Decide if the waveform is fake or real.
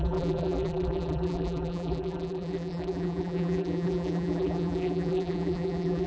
fake